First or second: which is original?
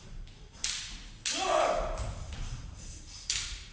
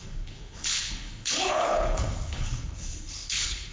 first